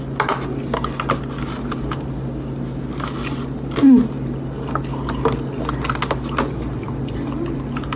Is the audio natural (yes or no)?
yes